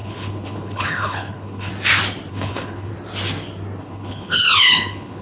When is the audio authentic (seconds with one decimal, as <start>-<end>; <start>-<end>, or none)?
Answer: 1.7-2.3; 2.9-3.8